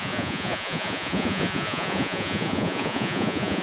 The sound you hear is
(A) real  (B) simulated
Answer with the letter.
B